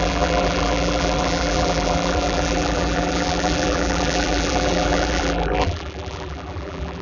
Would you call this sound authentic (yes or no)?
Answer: no